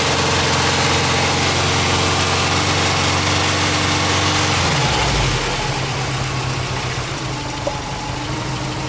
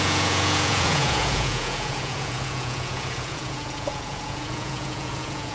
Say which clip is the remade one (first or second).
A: second